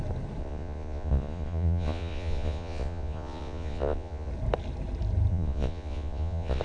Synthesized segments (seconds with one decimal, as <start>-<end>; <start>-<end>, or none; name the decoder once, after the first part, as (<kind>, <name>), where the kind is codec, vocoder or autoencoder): 0.4-4.3 (vocoder, Vocos); 5.3-6.6